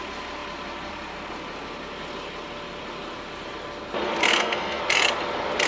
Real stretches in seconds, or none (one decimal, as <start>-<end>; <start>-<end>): 0.0-4.2; 4.8-5.7